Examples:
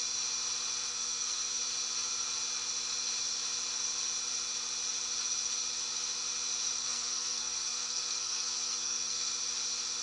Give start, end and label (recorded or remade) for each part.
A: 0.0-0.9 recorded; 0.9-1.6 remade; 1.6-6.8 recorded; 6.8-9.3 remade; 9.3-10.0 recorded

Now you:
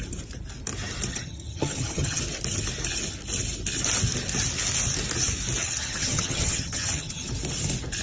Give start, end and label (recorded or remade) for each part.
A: 0.0-1.1 recorded; 1.1-2.2 remade; 2.2-5.6 recorded; 5.6-7.3 remade; 7.3-8.0 recorded

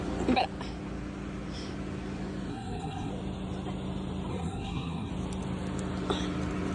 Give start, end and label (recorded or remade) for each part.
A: 0.0-2.5 recorded; 2.5-3.1 remade; 3.1-4.3 recorded; 4.3-5.1 remade; 5.1-6.7 recorded

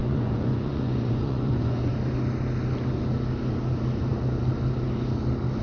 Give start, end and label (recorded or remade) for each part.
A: 0.0-1.9 remade; 1.9-5.6 recorded

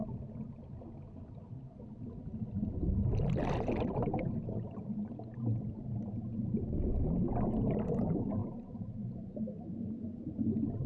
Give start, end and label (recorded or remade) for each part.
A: 0.0-10.9 recorded

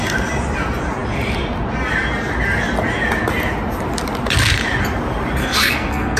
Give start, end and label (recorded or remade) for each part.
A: 0.0-5.4 recorded; 5.4-6.2 remade

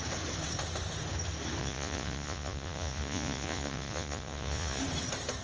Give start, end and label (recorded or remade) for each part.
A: 0.0-1.6 recorded; 1.6-4.8 remade; 4.8-5.4 recorded